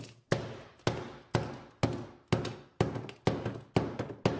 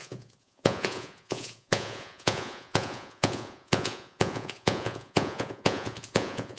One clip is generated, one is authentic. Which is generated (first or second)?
second